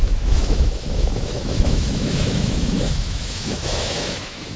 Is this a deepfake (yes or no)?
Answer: yes